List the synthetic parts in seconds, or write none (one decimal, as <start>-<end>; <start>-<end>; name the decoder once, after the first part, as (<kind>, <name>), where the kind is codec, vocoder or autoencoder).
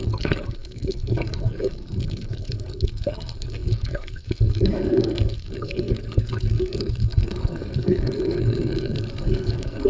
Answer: 0.0-9.9 (codec, SNAC)